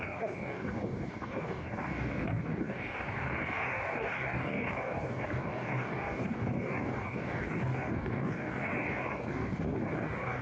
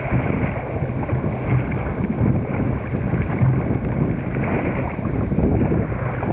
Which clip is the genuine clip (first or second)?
second